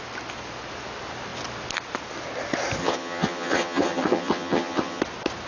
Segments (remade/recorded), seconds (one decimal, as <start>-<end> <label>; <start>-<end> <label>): 0.0-2.8 recorded; 2.8-5.0 remade; 5.0-5.5 recorded